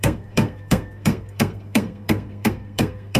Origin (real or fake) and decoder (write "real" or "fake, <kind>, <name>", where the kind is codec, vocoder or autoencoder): fake, codec, SNAC